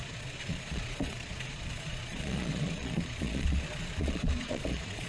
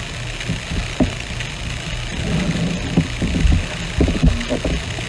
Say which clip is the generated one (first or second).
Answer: first